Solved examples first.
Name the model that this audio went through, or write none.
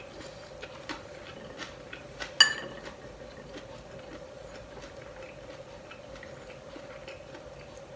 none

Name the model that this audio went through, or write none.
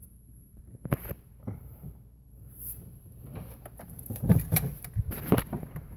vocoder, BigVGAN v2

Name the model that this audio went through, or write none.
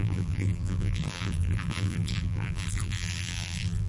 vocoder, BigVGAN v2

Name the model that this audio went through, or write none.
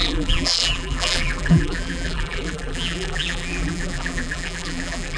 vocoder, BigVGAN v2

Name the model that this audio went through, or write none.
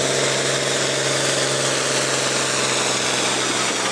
none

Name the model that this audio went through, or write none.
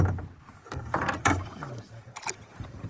vocoder, BigVGAN v2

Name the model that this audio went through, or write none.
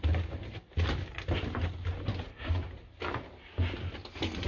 none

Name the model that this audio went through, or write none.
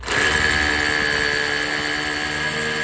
none